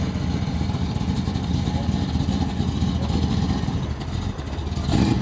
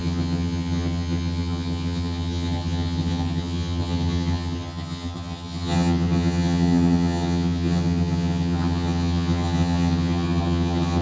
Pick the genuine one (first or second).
first